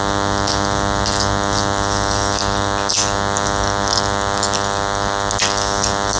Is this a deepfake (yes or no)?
no